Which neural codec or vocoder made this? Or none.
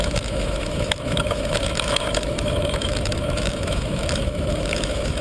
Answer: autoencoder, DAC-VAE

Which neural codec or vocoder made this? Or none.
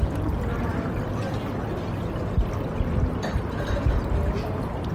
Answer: none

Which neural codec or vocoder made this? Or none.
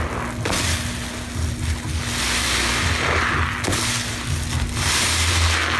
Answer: none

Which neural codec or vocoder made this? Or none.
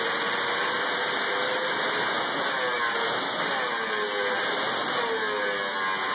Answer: none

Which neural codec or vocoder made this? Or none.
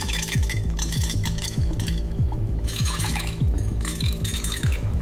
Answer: autoencoder, DAC-VAE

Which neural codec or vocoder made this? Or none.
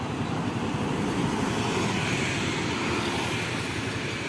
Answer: none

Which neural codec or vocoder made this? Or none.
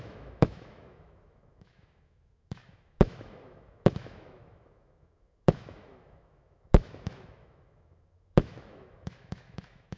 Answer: autoencoder, DAC-VAE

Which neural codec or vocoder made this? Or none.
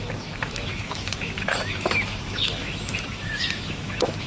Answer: autoencoder, DAC-VAE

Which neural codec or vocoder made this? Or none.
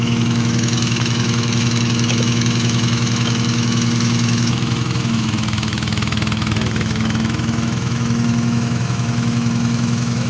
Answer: autoencoder, DAC-VAE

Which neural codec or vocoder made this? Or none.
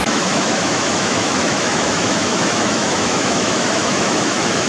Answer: autoencoder, DAC-VAE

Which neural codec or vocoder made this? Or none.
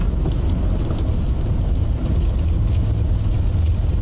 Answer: none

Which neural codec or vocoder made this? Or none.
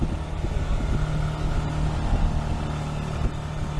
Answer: none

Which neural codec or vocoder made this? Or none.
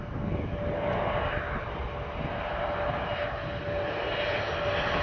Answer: none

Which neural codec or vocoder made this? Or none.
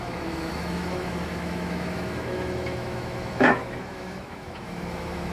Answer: autoencoder, DAC-VAE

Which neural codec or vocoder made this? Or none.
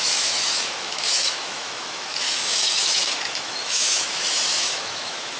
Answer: autoencoder, DAC-VAE